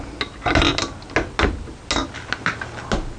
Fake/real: real